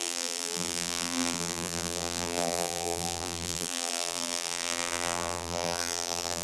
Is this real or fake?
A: fake